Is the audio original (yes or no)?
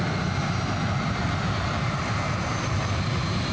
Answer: no